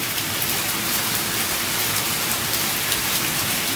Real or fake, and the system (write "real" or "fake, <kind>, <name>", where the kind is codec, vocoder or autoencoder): real